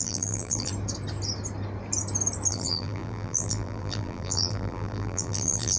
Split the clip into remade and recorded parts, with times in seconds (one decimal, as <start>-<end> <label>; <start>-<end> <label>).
0.0-0.7 remade; 0.7-2.5 recorded; 2.5-5.8 remade